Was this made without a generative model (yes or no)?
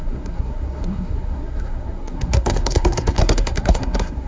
no